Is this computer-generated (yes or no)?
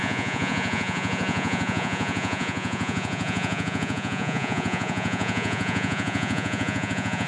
yes